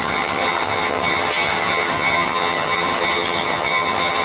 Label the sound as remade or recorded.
remade